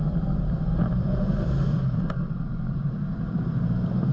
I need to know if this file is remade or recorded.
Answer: remade